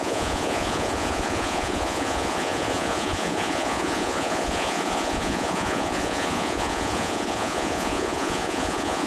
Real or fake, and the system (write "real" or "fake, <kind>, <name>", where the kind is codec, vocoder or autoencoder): fake, vocoder, Vocos